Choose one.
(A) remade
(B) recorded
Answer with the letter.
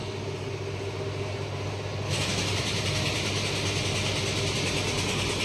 B